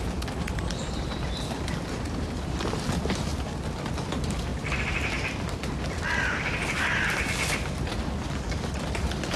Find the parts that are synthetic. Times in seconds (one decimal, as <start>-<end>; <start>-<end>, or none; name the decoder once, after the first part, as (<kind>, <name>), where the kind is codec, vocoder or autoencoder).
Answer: none